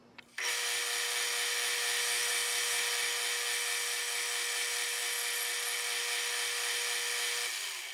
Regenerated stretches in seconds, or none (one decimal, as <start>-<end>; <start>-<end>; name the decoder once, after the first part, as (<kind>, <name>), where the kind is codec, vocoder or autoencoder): none